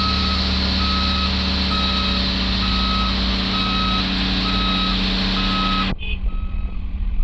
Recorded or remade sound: recorded